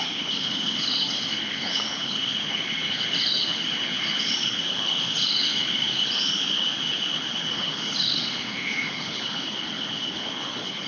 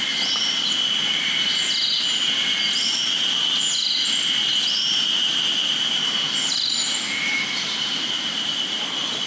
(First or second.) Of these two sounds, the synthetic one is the first